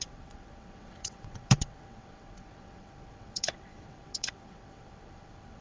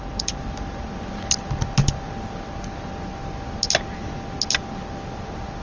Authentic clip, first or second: second